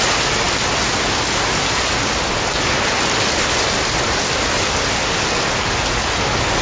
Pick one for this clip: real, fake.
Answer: real